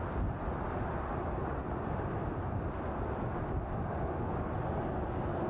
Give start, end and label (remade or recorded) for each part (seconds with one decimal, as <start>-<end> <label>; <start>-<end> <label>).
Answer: 0.0-5.5 recorded